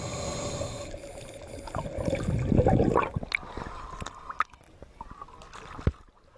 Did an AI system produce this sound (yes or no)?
no